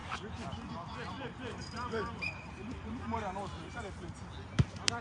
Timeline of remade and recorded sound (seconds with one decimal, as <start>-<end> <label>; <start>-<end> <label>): 0.0-1.1 recorded; 1.1-4.1 remade; 4.1-5.0 recorded